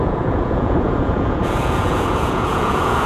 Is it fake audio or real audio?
fake